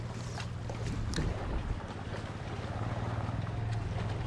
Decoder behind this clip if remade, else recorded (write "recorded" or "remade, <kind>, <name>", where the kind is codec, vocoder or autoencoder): recorded